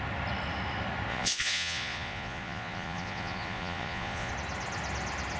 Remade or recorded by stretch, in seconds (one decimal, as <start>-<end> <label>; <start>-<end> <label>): 0.0-1.1 recorded; 1.1-4.3 remade; 4.3-5.4 recorded